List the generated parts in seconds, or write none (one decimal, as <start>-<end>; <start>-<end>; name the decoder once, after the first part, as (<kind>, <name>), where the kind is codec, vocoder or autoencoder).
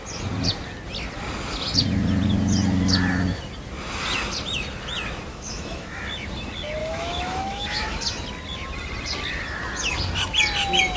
5.3-6.0 (autoencoder, DAC-VAE); 6.8-8.0